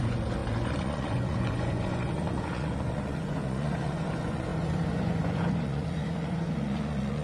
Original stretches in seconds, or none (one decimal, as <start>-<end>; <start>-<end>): none